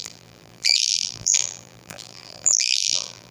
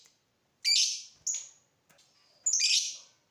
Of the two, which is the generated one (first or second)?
first